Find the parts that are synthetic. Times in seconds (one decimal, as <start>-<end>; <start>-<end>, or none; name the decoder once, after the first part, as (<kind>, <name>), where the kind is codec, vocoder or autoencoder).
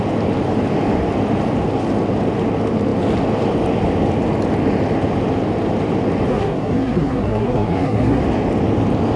6.3-8.2 (codec, SNAC)